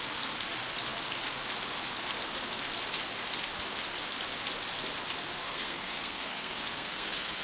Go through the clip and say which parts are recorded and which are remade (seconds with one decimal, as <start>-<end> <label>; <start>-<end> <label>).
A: 0.0-5.4 recorded; 5.4-7.4 remade